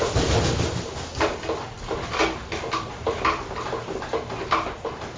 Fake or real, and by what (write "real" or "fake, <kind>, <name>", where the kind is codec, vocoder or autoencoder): real